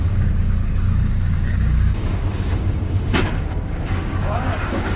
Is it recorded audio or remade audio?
remade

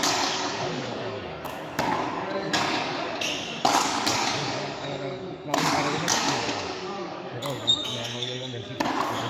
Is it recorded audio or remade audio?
remade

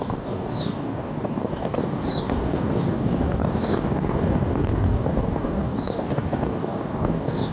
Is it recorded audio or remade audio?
remade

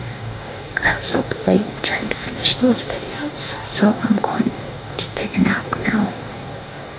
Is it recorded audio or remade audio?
remade